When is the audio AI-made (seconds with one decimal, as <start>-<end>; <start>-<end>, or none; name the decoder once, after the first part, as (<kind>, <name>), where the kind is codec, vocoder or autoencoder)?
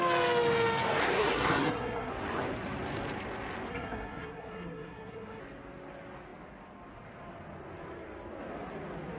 1.0-2.1 (codec, SNAC); 3.7-5.4